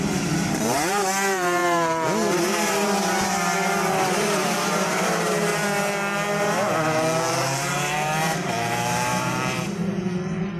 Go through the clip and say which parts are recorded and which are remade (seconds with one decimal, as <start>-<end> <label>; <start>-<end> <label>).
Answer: 0.0-5.5 remade; 5.5-7.3 recorded; 7.3-9.8 remade; 9.8-10.6 recorded